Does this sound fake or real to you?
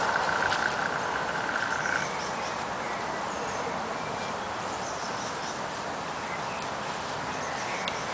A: real